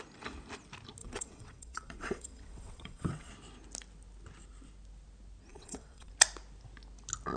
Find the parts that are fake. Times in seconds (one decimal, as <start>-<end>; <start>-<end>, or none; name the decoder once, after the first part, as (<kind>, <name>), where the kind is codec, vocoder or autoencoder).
1.0-3.3 (vocoder, WaveNeXt); 5.5-6.1